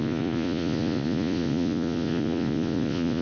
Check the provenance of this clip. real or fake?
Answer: fake